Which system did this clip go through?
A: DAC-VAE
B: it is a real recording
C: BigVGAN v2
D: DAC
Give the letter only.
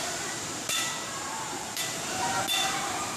C